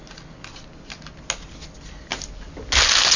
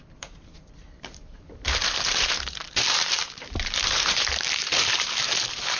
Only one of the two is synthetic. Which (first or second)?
second